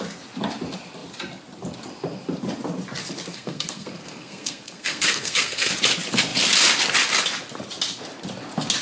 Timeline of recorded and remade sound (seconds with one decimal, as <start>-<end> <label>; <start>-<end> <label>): 0.0-3.3 recorded; 3.3-5.7 remade; 5.7-8.8 recorded